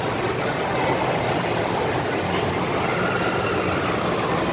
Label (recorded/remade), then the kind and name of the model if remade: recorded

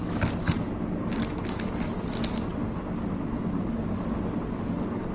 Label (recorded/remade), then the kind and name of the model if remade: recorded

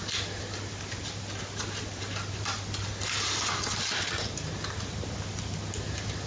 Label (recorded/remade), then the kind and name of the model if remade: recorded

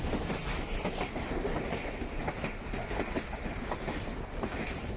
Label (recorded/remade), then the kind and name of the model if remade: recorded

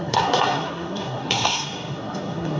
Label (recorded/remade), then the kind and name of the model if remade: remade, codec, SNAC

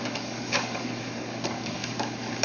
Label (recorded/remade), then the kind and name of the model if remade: remade, codec, DAC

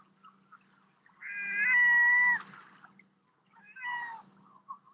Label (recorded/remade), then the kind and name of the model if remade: recorded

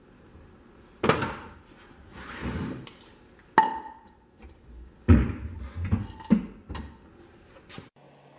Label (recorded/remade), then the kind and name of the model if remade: recorded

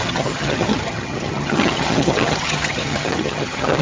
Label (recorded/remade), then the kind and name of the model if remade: remade, vocoder, HiFi-GAN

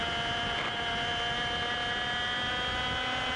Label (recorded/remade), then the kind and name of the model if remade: recorded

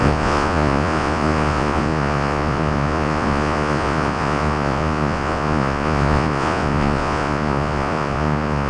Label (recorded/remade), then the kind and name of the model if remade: remade, vocoder, Vocos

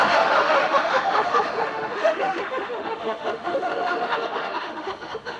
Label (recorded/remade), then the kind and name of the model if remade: remade, autoencoder, DAC-VAE